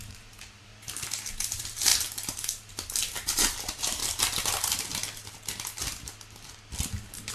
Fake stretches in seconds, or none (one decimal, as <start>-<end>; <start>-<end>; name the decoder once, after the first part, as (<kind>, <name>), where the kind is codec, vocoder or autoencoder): 0.0-0.7 (vocoder, BigVGAN v2); 1.2-4.0